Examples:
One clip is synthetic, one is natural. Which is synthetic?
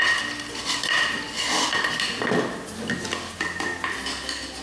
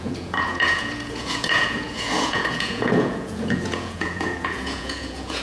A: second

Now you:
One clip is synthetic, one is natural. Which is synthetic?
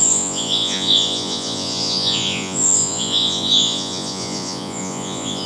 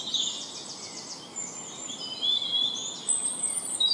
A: first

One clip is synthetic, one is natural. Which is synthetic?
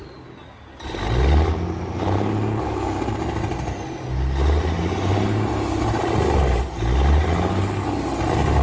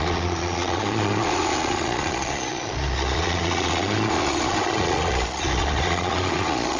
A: second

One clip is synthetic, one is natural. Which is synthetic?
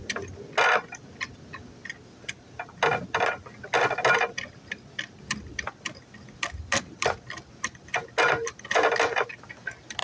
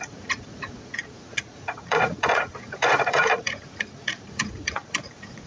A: second